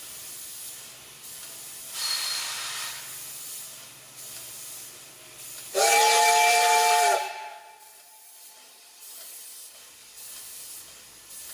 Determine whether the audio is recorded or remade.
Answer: recorded